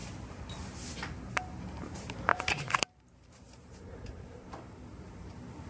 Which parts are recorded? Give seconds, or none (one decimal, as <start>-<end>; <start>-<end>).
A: 0.0-1.3